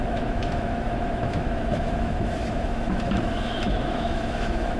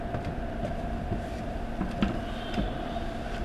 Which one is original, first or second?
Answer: second